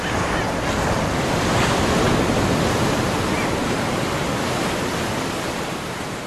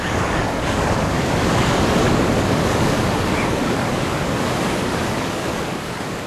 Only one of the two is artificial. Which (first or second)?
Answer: second